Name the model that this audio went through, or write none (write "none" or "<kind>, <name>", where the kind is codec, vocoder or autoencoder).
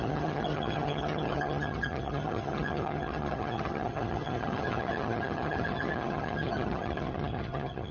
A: vocoder, HiFi-GAN